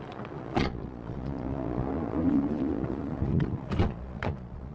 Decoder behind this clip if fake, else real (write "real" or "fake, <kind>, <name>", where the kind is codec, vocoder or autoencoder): fake, vocoder, Vocos